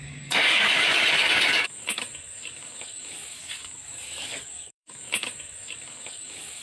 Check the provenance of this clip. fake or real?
fake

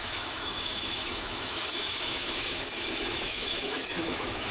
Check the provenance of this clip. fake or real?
fake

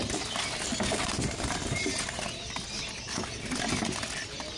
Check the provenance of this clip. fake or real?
real